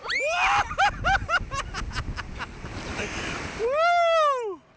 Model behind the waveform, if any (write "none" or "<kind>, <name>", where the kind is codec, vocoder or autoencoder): none